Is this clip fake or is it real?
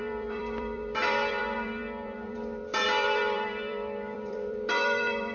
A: fake